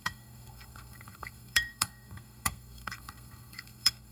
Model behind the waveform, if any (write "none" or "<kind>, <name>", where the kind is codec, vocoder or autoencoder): codec, SNAC